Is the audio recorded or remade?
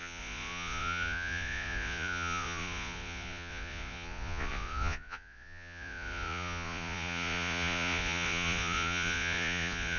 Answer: remade